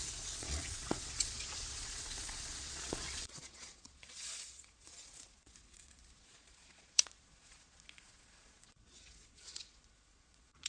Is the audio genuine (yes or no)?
no